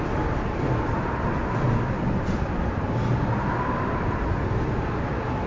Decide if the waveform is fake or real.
real